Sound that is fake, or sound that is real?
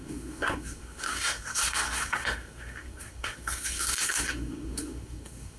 fake